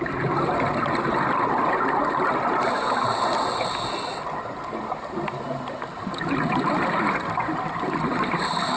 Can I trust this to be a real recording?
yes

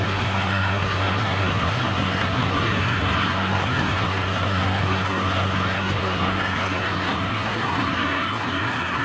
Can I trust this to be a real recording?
no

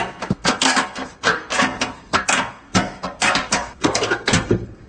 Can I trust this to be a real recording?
no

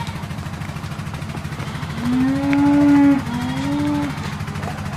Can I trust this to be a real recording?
yes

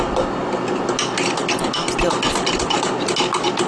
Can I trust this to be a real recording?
yes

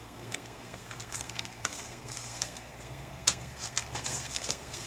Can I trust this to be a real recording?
no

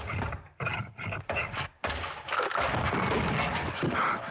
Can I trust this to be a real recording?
yes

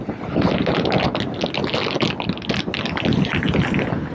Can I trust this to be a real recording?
yes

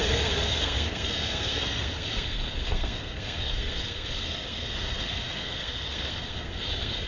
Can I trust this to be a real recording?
no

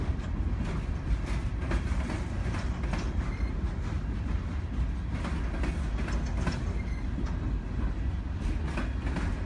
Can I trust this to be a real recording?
yes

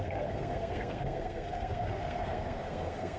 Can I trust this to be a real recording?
no